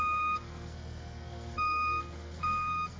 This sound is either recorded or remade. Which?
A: remade